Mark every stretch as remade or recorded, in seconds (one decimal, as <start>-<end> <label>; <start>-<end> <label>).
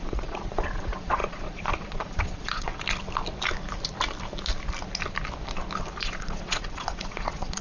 0.0-2.7 remade; 2.7-6.0 recorded; 6.0-7.6 remade